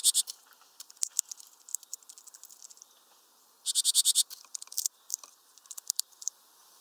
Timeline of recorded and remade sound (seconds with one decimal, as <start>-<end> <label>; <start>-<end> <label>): 0.0-6.8 remade